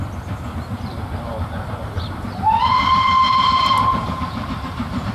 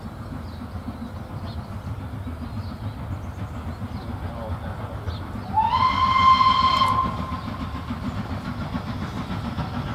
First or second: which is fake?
first